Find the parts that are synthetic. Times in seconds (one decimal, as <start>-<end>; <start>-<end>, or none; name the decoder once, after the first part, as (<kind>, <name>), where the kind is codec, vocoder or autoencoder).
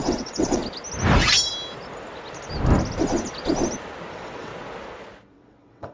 0.0-0.6 (vocoder, WaveNeXt); 4.1-4.5; 5.3-5.9